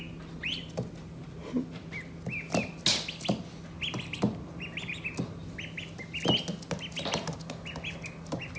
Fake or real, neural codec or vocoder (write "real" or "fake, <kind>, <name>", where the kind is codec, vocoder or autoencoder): real